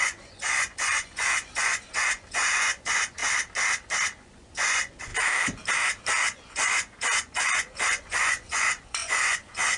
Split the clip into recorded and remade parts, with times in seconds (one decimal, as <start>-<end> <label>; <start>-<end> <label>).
0.0-3.2 remade; 3.2-4.2 recorded; 4.2-5.1 remade; 5.1-6.2 recorded; 6.2-9.8 remade